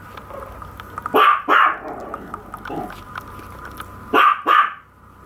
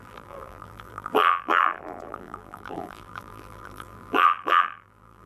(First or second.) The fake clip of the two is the second